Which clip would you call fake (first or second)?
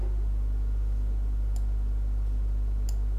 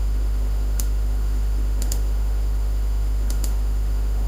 second